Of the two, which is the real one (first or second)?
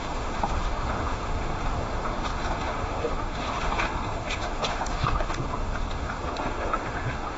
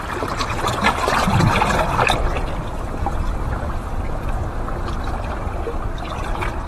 second